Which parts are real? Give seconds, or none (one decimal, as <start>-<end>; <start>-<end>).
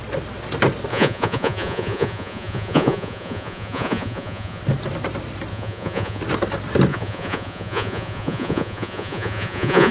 0.0-0.9; 4.6-5.5; 6.2-6.9